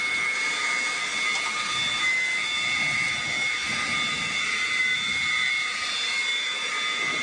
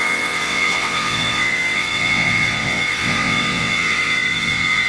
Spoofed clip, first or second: second